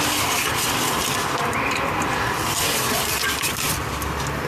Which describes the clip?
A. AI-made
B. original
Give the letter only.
B